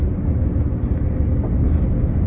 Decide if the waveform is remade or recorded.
recorded